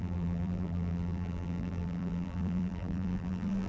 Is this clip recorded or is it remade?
remade